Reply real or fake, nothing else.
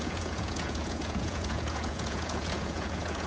fake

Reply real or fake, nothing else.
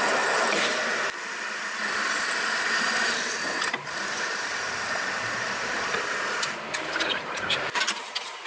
real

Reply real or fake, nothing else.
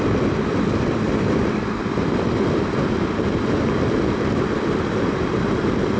fake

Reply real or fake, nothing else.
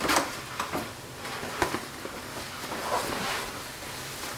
real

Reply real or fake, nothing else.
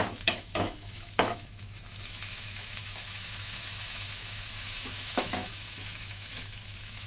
fake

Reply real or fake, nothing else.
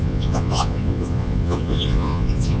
fake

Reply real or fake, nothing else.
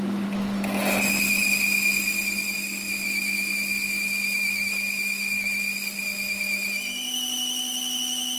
real